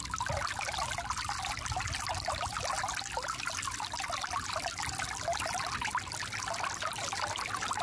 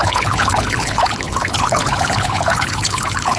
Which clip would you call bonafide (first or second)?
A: first